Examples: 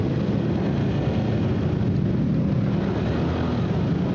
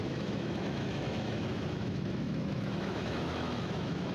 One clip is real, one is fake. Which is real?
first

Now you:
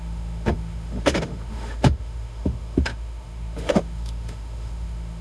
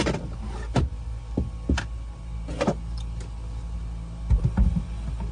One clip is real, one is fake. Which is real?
second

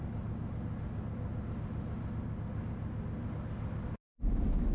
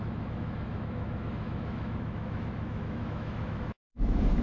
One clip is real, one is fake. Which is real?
first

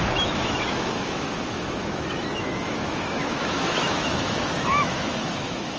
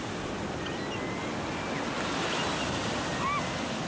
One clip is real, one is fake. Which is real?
second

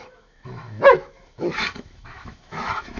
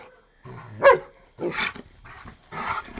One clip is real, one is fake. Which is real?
second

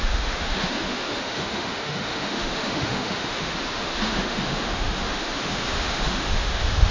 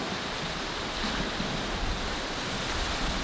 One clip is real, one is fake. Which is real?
second